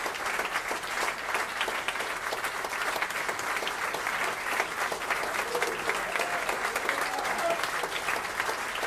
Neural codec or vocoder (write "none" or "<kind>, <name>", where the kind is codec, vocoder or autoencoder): none